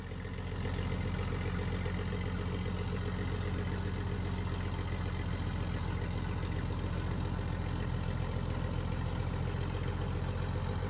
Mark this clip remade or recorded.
recorded